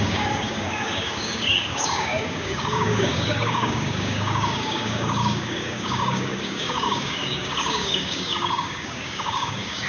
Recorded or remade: remade